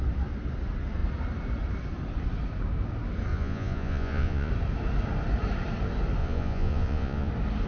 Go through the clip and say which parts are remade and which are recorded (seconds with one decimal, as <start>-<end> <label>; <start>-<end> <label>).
0.0-3.3 recorded; 3.3-4.5 remade; 4.5-6.2 recorded; 6.2-7.3 remade; 7.3-7.7 recorded